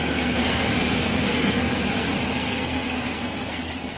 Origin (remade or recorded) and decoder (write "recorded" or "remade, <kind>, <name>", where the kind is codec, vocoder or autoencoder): remade, codec, SNAC